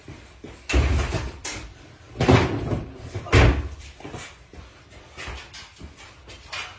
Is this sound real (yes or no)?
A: yes